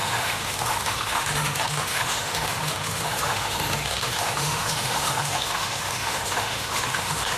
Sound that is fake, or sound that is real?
fake